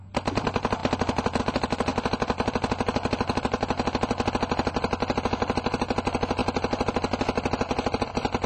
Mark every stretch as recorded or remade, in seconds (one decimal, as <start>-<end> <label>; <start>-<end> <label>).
0.0-8.5 recorded